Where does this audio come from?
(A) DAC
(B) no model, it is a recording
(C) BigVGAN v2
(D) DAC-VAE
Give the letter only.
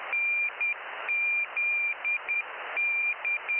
C